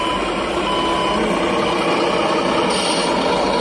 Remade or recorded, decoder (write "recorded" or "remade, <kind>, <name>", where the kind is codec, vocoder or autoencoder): recorded